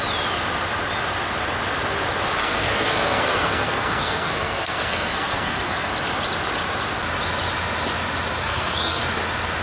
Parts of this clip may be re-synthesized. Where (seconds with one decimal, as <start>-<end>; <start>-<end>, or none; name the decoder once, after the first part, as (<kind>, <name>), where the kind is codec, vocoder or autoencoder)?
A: 2.4-5.9 (codec, SNAC); 8.4-9.0